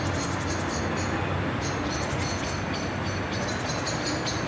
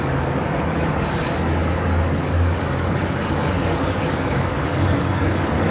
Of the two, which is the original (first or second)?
first